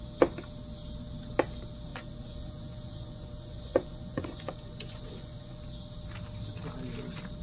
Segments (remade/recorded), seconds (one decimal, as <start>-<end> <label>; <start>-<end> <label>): 0.0-1.9 recorded; 1.9-5.6 remade; 5.6-7.4 recorded